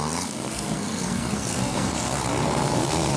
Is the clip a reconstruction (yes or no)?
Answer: yes